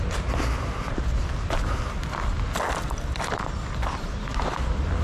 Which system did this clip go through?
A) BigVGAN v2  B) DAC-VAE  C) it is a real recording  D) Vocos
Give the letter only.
C